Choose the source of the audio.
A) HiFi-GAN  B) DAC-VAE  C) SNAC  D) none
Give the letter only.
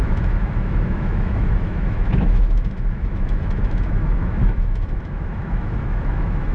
B